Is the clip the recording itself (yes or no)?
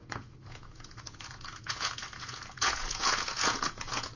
no